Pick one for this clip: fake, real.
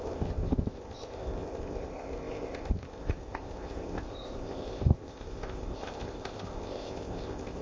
fake